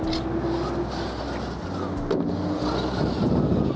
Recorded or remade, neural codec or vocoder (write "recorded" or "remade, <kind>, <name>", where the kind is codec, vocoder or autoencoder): recorded